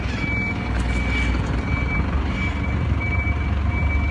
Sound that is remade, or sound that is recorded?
recorded